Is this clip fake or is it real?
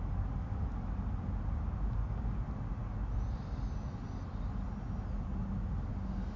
real